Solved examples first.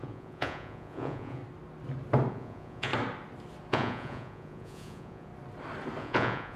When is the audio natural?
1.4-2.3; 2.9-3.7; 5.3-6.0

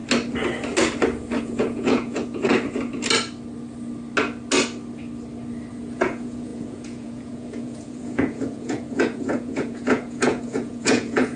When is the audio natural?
0.0-1.4; 2.5-5.7

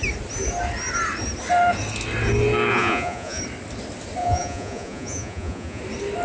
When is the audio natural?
0.0-2.7; 3.4-4.2; 5.8-6.2

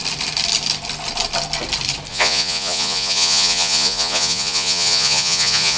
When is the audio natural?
0.0-2.1

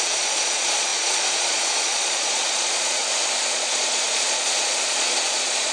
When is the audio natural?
3.0-3.5

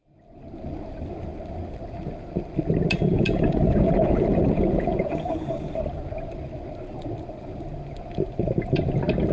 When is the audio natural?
0.0-3.1; 5.5-9.3

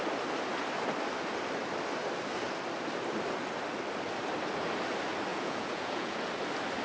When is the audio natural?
0.0-5.3; 6.2-6.8